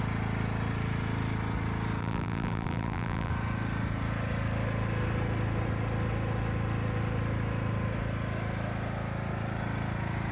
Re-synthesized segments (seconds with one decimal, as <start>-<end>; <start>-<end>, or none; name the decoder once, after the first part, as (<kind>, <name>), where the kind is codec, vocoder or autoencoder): 2.0-3.3 (vocoder, BigVGAN v2)